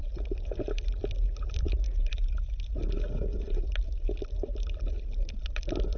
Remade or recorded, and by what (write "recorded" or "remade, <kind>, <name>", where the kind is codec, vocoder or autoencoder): recorded